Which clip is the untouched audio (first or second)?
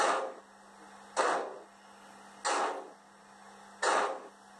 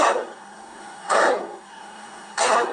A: first